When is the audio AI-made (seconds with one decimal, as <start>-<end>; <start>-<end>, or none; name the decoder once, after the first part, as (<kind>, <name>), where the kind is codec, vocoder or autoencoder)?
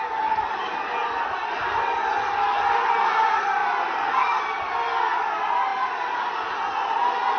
none